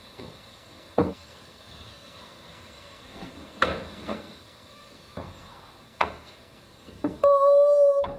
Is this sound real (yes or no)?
no